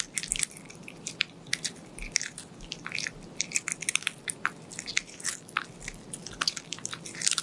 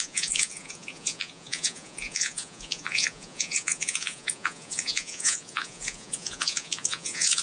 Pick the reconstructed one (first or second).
second